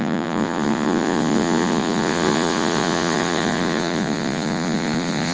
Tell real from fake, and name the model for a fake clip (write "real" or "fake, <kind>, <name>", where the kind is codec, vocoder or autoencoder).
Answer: fake, vocoder, Vocos